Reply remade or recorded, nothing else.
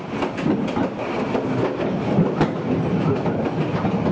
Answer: recorded